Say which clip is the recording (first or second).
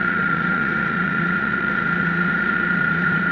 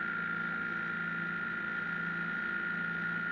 second